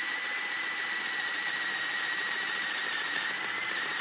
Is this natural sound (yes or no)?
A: yes